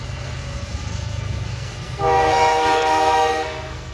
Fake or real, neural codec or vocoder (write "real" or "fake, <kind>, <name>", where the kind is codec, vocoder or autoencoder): fake, codec, SNAC